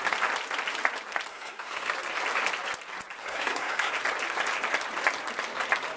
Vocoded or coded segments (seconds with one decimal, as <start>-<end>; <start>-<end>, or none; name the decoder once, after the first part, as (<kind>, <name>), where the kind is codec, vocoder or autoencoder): 1.3-1.9 (codec, SNAC); 3.2-3.9